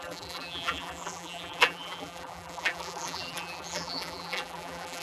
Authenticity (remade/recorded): remade